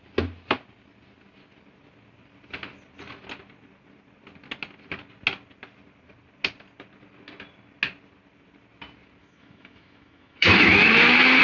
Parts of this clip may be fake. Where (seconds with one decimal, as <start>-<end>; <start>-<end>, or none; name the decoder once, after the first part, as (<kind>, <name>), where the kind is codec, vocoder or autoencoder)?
9.2-11.4 (autoencoder, DAC-VAE)